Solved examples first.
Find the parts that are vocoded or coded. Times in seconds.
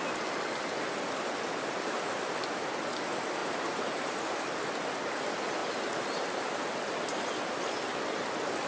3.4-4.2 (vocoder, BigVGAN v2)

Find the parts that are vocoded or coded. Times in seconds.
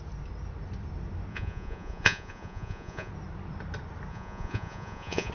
1.3-3.1 (vocoder, Vocos); 4.1-5.3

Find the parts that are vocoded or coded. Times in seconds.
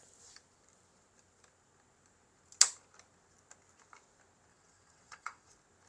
4.5-5.5 (vocoder, WaveNeXt)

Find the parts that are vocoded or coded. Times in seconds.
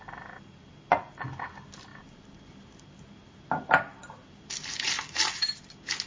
1.9-5.6 (vocoder, BigVGAN v2)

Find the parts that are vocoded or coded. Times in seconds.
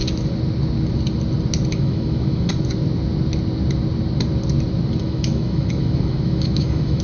1.7-2.5 (autoencoder, DAC-VAE); 5.0-7.0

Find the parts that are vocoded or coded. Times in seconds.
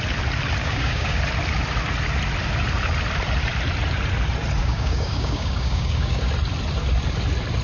0.6-1.2 (codec, DAC); 4.6-6.3